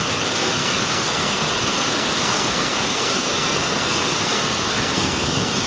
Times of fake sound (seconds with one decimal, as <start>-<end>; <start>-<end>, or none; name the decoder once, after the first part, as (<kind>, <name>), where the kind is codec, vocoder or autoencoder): 0.0-5.7 (codec, SNAC)